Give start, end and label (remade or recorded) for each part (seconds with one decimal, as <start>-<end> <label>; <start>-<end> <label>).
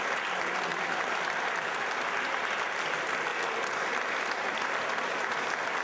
0.0-0.7 recorded; 0.7-2.2 remade; 2.2-3.3 recorded; 3.3-5.8 remade